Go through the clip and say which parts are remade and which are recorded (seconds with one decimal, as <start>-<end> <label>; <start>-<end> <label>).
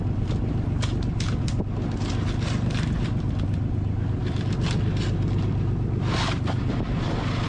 0.0-7.5 recorded